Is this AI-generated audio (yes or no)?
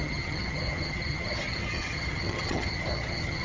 yes